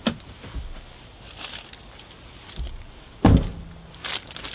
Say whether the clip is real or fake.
real